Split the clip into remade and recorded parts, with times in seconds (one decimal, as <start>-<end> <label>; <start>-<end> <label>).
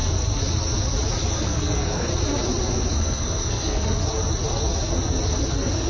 0.0-1.3 recorded; 1.3-2.1 remade; 2.1-2.9 recorded; 2.9-4.0 remade; 4.0-5.5 recorded; 5.5-5.9 remade